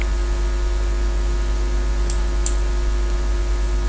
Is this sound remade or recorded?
recorded